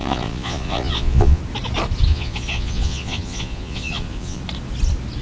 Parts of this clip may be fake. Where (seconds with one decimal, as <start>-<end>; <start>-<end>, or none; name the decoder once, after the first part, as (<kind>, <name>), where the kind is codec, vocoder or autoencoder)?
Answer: 0.0-1.4 (vocoder, Vocos); 2.1-4.4